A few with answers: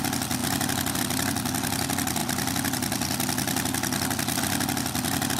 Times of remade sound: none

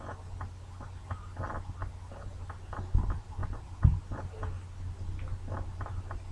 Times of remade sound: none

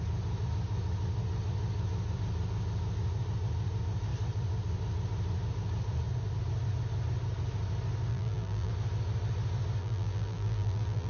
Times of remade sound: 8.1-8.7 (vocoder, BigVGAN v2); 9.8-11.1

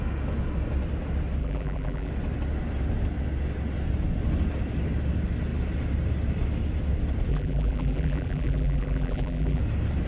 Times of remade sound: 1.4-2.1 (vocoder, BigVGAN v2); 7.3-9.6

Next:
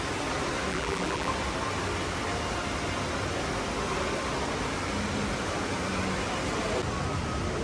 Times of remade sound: 0.7-1.3 (vocoder, BigVGAN v2)

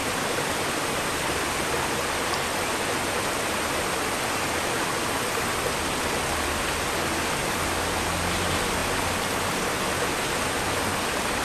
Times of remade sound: 0.0-1.1 (vocoder, BigVGAN v2)

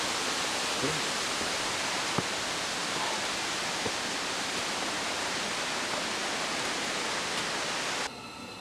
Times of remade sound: 2.8-4.6 (vocoder, BigVGAN v2)

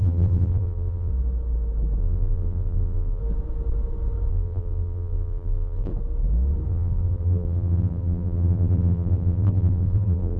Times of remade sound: 0.0-1.1 (vocoder, BigVGAN v2); 2.0-3.2; 4.3-5.9; 6.7-10.4